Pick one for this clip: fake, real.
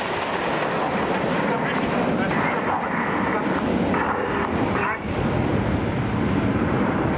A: real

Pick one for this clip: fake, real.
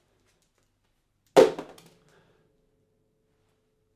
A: real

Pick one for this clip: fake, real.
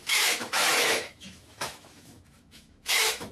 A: fake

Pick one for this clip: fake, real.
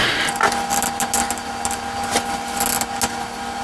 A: real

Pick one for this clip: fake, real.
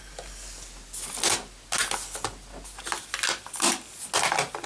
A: real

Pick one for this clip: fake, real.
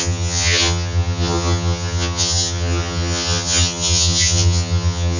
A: fake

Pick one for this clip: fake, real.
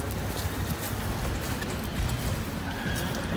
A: real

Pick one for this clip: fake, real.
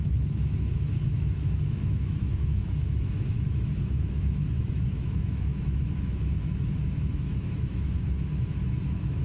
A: fake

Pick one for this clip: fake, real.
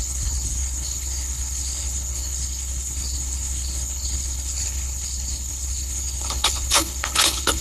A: fake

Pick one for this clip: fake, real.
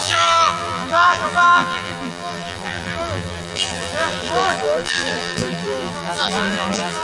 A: fake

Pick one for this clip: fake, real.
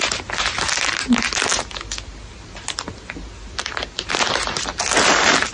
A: real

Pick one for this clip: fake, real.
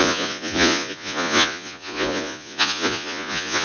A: fake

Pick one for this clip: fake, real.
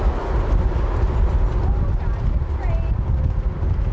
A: real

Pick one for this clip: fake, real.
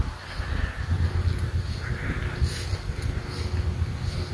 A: real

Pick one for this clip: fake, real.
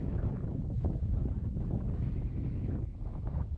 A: fake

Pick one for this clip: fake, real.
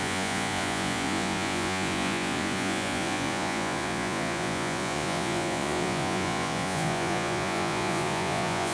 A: fake